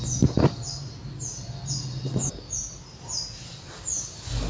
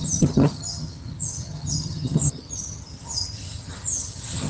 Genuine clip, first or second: first